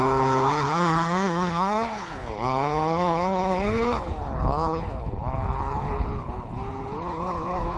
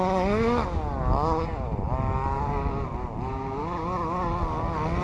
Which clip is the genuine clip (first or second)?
second